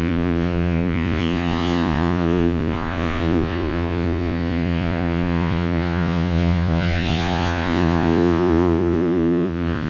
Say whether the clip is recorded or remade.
remade